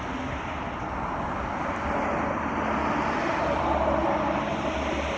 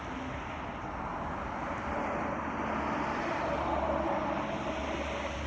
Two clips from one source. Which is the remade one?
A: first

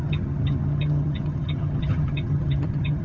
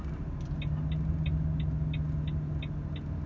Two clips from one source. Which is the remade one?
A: first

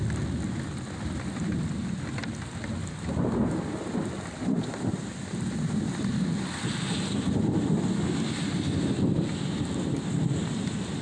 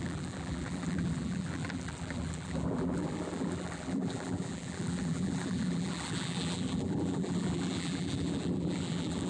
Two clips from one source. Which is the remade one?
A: second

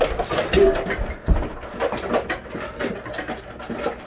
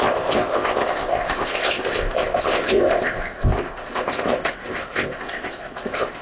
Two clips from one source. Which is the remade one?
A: second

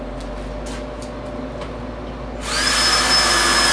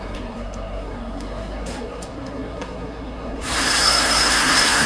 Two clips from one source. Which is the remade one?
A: second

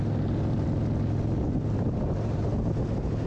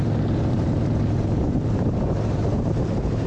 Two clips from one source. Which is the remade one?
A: second